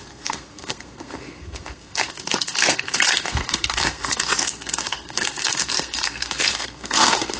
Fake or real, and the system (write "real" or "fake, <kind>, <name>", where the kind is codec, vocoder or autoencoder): fake, codec, SNAC